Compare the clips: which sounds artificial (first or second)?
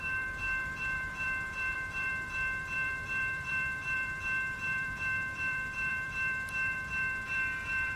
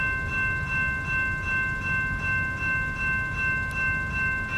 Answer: first